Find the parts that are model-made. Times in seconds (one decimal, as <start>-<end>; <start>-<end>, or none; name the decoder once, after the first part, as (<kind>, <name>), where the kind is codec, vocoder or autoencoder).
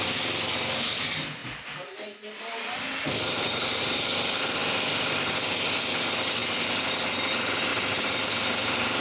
4.6-5.3 (vocoder, BigVGAN v2); 6.4-6.9; 7.7-8.6